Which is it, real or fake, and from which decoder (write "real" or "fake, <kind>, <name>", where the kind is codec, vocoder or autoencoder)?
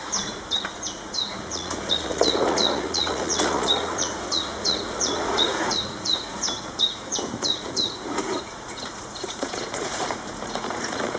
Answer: fake, vocoder, Vocos